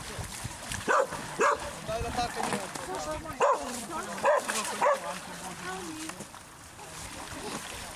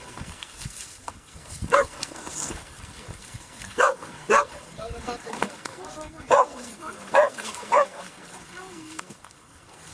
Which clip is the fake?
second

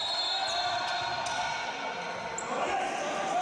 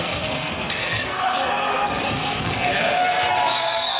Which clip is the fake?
second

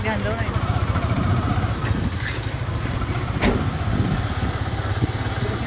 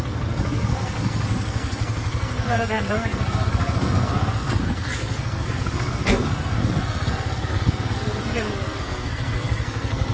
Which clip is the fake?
second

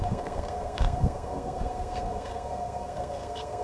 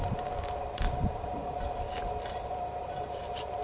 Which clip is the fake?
first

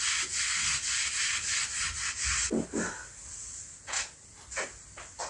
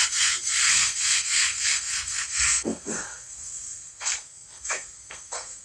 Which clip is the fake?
second